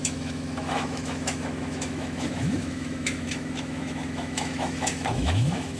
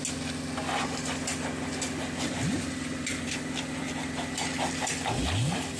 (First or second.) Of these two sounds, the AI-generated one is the first